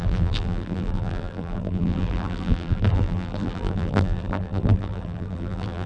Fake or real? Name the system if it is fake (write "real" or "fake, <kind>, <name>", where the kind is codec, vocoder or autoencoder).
fake, vocoder, BigVGAN v2